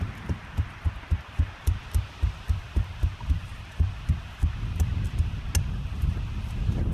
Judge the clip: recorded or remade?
recorded